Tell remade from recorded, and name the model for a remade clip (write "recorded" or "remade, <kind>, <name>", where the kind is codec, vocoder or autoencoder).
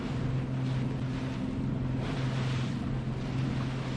recorded